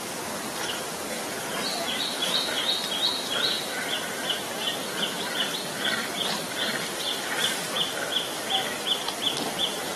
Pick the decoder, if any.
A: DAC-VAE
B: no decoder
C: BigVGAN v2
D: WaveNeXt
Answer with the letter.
C